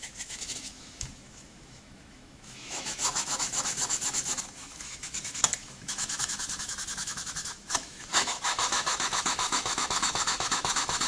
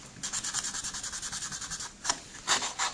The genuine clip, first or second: second